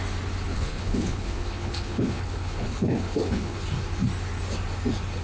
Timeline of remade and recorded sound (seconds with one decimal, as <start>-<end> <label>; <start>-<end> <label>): 0.0-0.5 recorded; 0.5-3.6 remade; 3.6-5.2 recorded